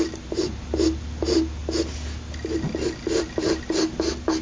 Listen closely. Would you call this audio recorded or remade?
recorded